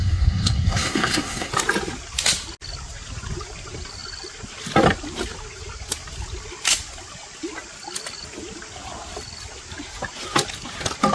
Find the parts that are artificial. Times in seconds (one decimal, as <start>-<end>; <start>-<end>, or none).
0.0-1.5